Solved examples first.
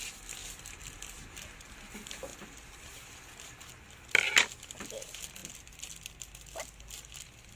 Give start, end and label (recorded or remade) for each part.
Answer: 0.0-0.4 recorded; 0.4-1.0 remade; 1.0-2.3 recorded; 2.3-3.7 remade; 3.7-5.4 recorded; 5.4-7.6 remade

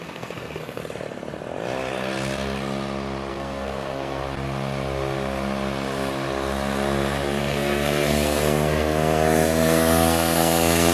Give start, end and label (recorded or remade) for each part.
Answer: 0.0-0.8 remade; 0.8-3.3 recorded; 3.3-4.2 remade; 4.2-7.4 recorded; 7.4-10.9 remade

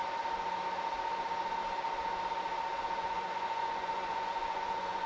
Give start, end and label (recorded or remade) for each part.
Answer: 0.0-3.0 recorded; 3.0-5.1 remade

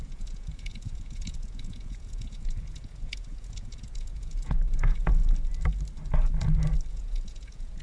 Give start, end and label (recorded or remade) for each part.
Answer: 0.0-5.2 remade; 5.2-6.9 recorded; 6.9-7.8 remade

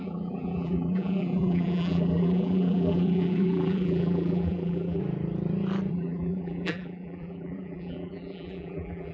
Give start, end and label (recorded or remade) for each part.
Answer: 0.0-5.0 remade; 5.0-5.9 recorded; 5.9-9.1 remade

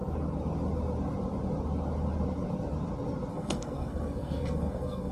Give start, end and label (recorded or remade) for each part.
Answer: 0.0-3.3 recorded; 3.3-5.1 remade

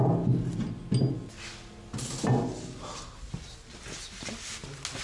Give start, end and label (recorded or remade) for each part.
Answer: 0.0-5.0 recorded

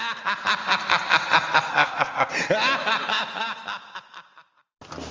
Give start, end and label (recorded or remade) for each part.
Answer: 0.0-1.7 recorded; 1.7-2.3 remade; 2.3-5.1 recorded